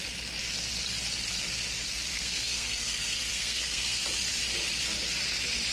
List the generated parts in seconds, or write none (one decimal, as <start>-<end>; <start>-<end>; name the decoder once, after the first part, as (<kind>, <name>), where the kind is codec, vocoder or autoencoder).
2.1-4.0 (codec, SNAC)